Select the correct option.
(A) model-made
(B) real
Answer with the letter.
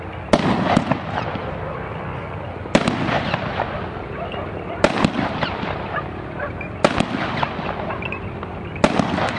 B